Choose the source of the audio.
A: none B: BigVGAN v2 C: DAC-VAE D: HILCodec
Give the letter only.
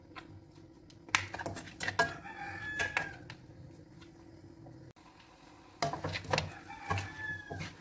A